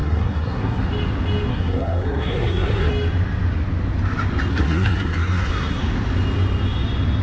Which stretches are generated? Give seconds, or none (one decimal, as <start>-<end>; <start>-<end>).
0.0-0.8; 1.5-2.9; 4.5-5.8